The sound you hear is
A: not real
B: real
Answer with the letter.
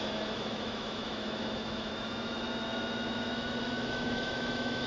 A